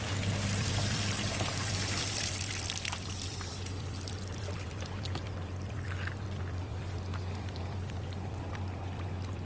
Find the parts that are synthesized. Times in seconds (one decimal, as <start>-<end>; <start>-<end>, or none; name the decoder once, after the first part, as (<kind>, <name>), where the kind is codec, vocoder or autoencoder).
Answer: 0.0-9.5 (vocoder, BigVGAN v2)